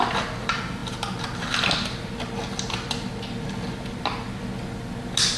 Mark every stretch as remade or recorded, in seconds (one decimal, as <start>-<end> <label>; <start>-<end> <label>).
0.0-5.4 recorded